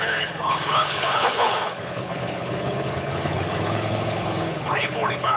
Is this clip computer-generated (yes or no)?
yes